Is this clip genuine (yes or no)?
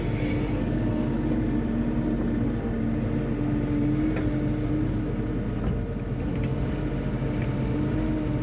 yes